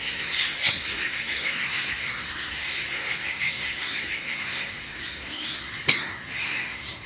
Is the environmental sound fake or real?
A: fake